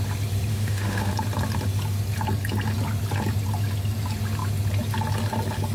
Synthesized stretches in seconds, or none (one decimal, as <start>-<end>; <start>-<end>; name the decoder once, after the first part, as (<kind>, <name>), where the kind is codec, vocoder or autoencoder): 0.5-1.1 (autoencoder, DAC-VAE)